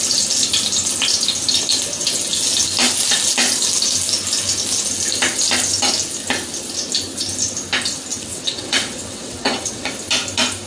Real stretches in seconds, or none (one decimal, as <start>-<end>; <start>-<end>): 0.0-8.1; 9.9-10.7